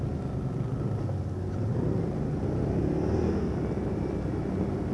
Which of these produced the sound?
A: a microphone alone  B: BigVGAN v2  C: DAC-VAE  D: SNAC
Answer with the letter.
A